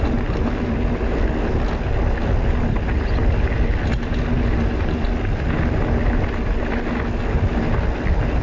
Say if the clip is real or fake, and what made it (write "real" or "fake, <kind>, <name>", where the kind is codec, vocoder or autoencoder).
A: real